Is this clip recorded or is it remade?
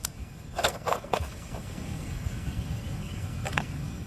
remade